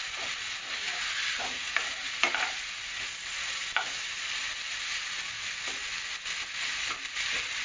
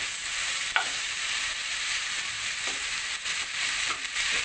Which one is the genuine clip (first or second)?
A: first